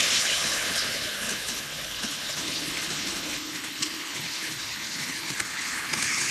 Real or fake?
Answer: fake